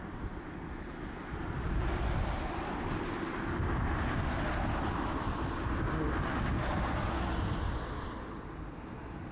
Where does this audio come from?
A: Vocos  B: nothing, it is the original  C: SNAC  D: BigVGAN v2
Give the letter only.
B